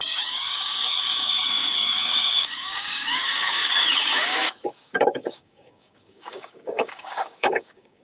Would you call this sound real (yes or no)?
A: no